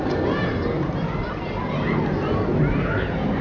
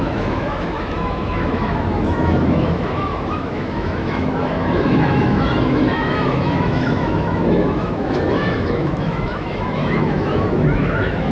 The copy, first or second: second